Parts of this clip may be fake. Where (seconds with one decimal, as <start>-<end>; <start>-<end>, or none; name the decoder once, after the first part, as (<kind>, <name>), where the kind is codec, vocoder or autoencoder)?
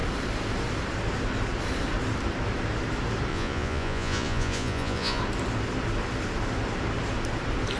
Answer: 3.3-5.2 (vocoder, Vocos)